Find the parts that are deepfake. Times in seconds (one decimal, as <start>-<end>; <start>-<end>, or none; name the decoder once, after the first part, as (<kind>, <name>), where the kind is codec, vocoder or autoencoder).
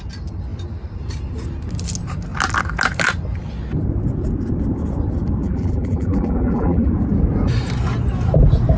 5.4-6.9 (vocoder, BigVGAN v2)